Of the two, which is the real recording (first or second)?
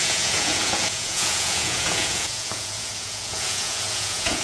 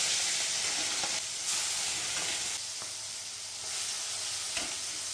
second